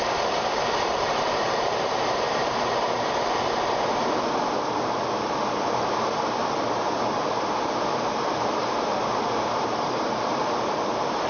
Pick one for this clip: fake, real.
fake